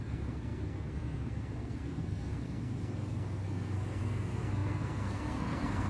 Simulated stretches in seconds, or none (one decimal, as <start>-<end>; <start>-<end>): 0.0-5.9